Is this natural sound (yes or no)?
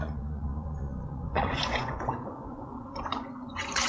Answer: no